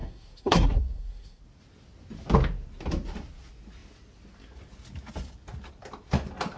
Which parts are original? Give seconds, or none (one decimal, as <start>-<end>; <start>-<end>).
1.4-6.6